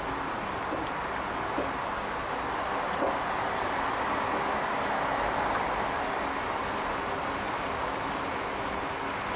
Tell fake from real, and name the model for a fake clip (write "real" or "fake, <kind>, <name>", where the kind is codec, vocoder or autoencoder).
real